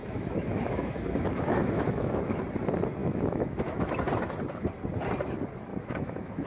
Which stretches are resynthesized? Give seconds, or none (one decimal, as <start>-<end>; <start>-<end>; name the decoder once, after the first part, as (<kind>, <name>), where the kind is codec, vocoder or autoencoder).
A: 0.0-2.4 (autoencoder, DAC-VAE); 3.0-3.9; 5.7-6.5